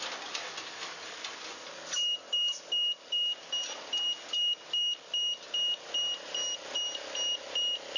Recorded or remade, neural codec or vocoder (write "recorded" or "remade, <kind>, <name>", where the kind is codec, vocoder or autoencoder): recorded